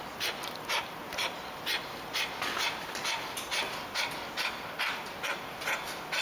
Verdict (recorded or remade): recorded